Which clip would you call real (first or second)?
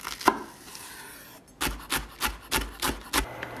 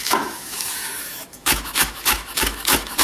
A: first